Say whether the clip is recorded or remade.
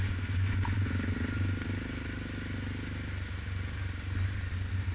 recorded